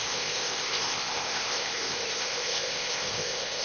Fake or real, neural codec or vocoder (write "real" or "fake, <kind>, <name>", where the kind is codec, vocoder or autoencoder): fake, codec, ZipCodec